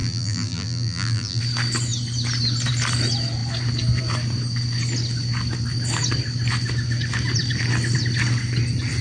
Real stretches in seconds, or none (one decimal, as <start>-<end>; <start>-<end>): 1.4-9.0